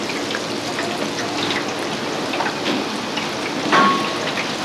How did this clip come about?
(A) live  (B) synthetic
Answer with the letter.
A